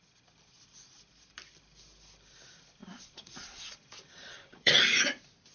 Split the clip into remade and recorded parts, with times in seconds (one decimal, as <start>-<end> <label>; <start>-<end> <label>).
0.0-2.8 recorded; 2.8-4.8 remade; 4.8-5.5 recorded